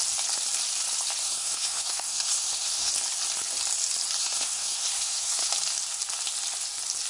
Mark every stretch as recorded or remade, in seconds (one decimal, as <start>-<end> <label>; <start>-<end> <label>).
0.0-1.2 recorded; 1.2-2.9 remade; 2.9-4.2 recorded; 4.2-5.5 remade; 5.5-7.1 recorded